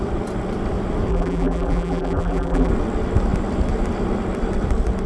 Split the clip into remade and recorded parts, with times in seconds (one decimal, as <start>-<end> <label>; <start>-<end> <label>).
0.0-1.1 recorded; 1.1-2.7 remade; 2.7-5.1 recorded